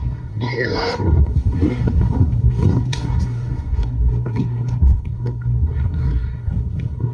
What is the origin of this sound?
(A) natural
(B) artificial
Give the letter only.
B